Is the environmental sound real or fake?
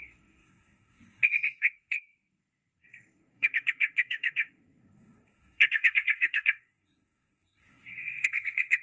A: fake